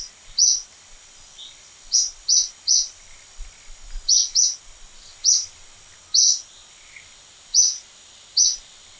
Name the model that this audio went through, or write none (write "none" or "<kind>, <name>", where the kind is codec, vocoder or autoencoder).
none